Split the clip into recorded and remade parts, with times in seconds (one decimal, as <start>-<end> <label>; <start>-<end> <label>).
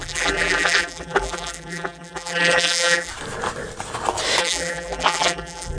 0.0-3.1 remade; 3.1-4.4 recorded; 4.4-5.8 remade